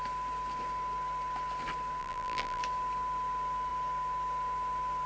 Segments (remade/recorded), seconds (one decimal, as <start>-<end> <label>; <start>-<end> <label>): 0.0-2.0 recorded; 2.0-2.6 remade; 2.6-5.1 recorded